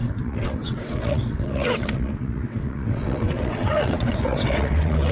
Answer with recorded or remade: remade